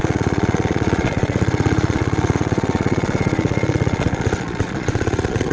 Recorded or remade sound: remade